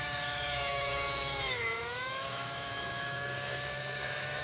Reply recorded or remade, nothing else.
remade